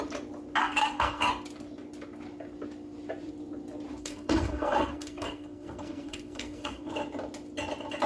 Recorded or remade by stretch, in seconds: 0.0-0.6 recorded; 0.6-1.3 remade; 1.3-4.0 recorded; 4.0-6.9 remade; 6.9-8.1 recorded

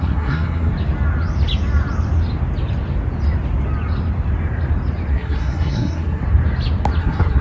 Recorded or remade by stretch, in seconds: 0.0-0.7 remade; 0.7-5.1 recorded; 5.1-6.2 remade; 6.2-7.0 recorded; 7.0-7.4 remade

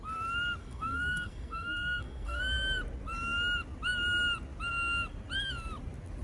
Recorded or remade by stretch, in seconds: 0.0-0.6 recorded; 0.6-2.4 remade; 2.4-6.2 recorded

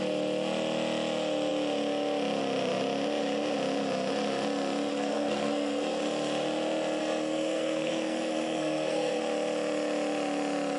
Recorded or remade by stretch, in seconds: 0.0-4.9 recorded; 4.9-6.0 remade; 6.0-7.0 recorded; 7.0-9.2 remade; 9.2-10.8 recorded

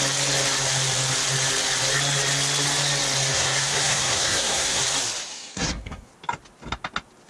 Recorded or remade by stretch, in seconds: 0.0-3.3 recorded; 3.3-4.8 remade; 4.8-5.3 recorded; 5.3-6.1 remade; 6.1-7.3 recorded

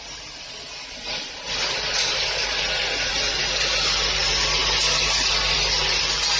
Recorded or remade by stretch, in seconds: 0.0-6.4 recorded

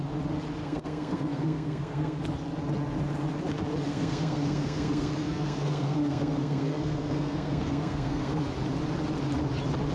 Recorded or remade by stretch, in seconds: 0.0-0.6 recorded; 0.6-2.2 remade; 2.2-3.9 recorded; 3.9-8.4 remade; 8.4-9.9 recorded

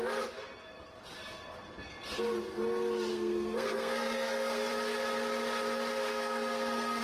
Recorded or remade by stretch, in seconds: 0.0-3.1 recorded; 3.1-4.7 remade; 4.7-5.9 recorded; 5.9-7.0 remade